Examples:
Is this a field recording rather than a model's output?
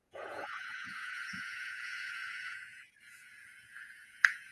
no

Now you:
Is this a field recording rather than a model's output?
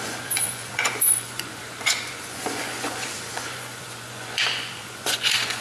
no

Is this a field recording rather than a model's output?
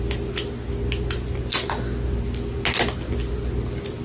yes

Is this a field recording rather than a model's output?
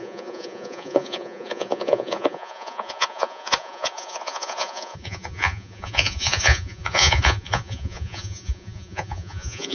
no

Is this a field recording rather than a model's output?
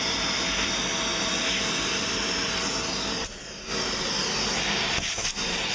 yes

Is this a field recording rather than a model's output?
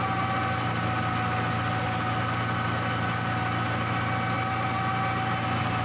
yes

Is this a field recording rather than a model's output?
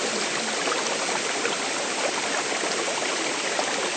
yes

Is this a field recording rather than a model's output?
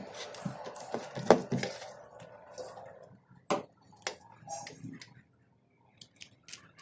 yes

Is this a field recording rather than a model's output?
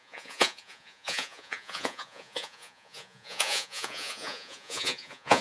no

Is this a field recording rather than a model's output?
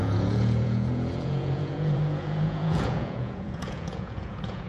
no